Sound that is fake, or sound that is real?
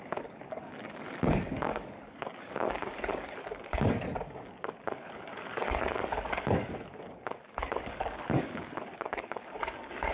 fake